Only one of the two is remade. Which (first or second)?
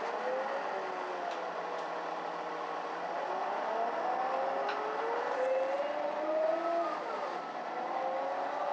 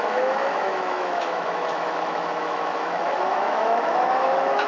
second